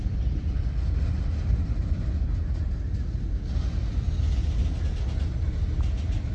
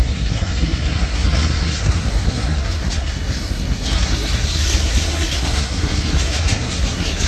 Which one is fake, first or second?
second